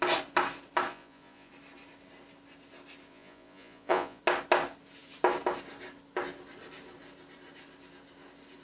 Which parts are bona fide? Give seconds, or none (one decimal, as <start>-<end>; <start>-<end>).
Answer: 0.0-0.9; 1.5-3.1; 4.2-8.6